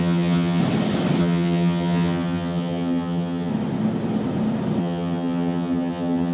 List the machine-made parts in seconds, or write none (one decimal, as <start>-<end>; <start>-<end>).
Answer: 0.0-0.6; 1.2-3.5; 4.8-6.3